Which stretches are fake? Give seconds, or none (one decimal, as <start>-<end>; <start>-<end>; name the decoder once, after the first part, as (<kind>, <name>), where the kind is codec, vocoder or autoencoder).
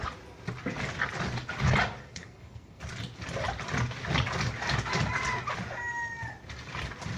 2.0-2.8 (codec, SNAC)